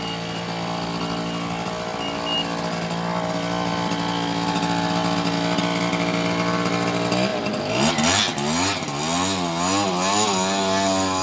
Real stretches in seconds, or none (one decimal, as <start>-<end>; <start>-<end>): 0.0-11.2